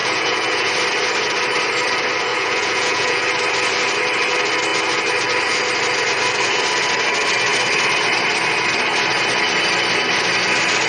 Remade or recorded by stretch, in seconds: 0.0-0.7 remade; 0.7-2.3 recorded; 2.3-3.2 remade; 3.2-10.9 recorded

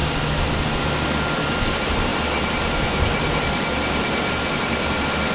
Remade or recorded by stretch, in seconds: 0.0-0.8 recorded; 0.8-5.3 remade

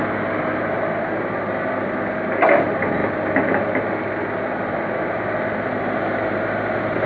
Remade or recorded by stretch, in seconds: 0.0-7.1 recorded

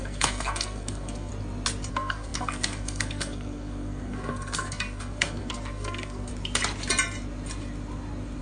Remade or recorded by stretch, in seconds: 0.0-1.3 remade; 1.3-1.9 recorded; 1.9-6.3 remade; 6.3-8.4 recorded

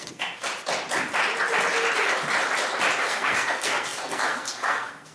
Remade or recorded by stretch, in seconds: 0.0-0.5 remade; 0.5-3.0 recorded; 3.0-5.1 remade

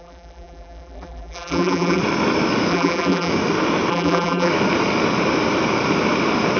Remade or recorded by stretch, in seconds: 0.0-2.0 remade; 2.0-2.7 recorded; 2.7-3.3 remade; 3.3-3.9 recorded; 3.9-4.5 remade; 4.5-6.6 recorded

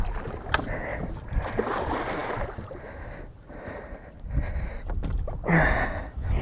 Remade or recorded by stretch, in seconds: 0.0-6.4 recorded

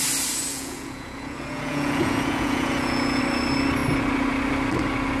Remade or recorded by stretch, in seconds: 0.0-0.5 recorded; 0.5-3.2 remade; 3.2-5.2 recorded